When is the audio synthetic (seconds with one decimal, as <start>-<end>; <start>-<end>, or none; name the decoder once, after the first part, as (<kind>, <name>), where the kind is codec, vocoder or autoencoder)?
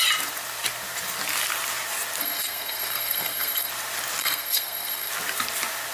2.2-3.7 (codec, SNAC); 4.2-5.1